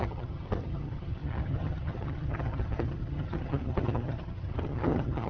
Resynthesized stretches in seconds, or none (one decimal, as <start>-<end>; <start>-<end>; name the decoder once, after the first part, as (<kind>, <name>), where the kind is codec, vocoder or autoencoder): 0.0-5.3 (vocoder, HiFi-GAN)